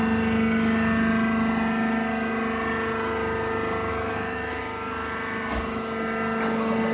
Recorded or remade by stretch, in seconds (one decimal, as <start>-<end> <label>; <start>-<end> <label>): 0.0-3.9 recorded; 3.9-4.6 remade; 4.6-6.9 recorded